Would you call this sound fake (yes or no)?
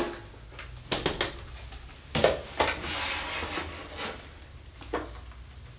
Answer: no